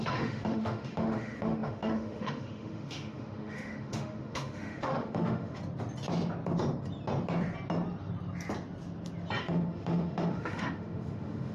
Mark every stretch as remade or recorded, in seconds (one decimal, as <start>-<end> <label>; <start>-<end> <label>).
0.0-5.6 remade; 5.6-9.4 recorded; 9.4-11.5 remade